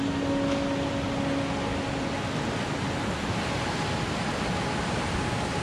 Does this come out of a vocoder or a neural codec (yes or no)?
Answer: no